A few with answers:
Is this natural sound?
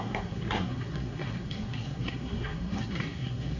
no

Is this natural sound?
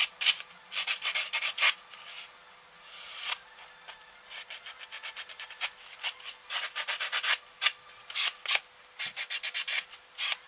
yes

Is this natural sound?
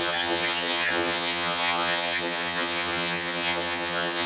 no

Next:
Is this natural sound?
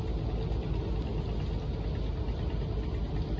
yes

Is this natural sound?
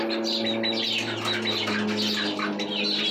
yes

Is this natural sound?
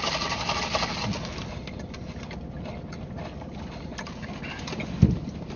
yes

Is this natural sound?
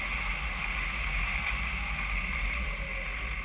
yes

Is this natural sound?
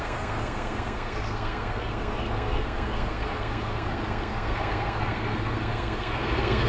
no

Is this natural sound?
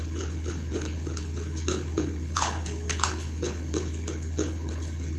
no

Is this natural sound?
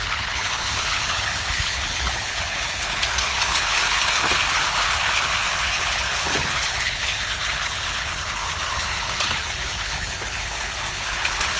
no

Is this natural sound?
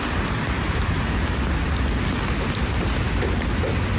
yes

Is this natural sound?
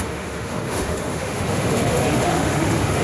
no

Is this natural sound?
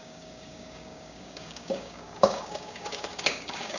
no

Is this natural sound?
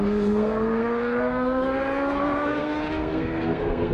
no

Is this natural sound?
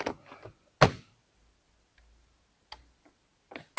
yes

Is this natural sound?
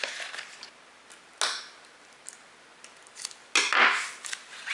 yes